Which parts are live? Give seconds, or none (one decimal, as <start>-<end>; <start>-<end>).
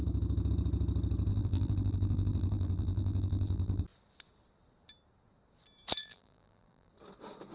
0.0-1.3; 3.8-6.0; 6.9-7.5